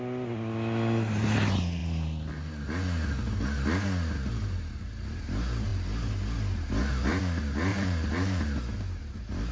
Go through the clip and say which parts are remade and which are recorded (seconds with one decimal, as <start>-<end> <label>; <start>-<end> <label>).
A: 0.0-7.7 recorded; 7.7-8.4 remade; 8.4-9.5 recorded